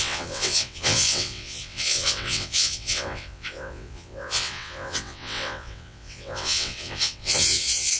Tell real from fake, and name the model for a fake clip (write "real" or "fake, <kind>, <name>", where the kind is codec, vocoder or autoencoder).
fake, vocoder, WaveNeXt